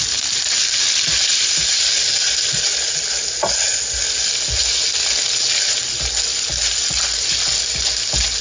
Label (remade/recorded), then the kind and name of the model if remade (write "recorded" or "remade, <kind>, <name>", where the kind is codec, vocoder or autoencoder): recorded